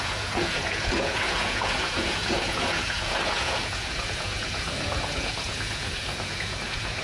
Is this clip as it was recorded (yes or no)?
no